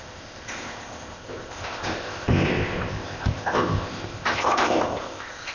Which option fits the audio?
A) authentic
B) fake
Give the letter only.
B